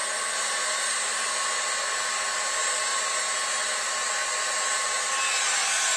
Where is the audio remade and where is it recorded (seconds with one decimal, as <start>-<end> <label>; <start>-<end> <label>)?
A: 0.0-6.0 recorded